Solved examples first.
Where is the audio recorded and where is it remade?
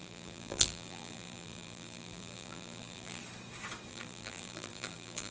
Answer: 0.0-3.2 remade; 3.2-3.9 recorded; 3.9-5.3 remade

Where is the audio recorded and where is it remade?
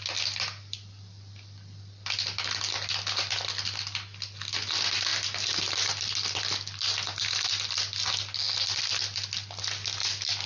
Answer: 0.0-10.5 recorded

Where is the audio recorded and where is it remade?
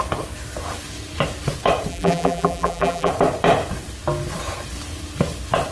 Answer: 0.0-1.9 recorded; 1.9-3.1 remade; 3.1-5.7 recorded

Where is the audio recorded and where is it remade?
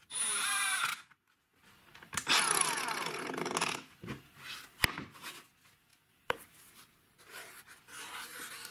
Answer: 0.0-5.9 recorded; 5.9-7.8 remade; 7.8-8.7 recorded